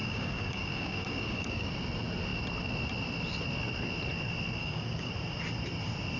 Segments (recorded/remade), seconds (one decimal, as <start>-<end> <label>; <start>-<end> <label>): 0.0-1.7 remade; 1.7-4.6 recorded; 4.6-5.1 remade; 5.1-6.2 recorded